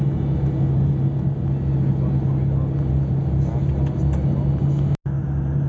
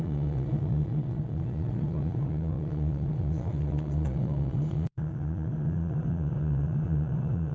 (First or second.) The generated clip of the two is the second